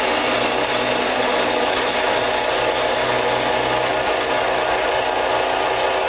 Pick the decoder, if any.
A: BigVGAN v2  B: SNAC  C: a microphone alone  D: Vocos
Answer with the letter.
C